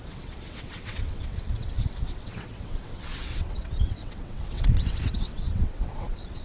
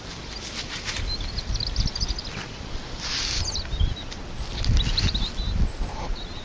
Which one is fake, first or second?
first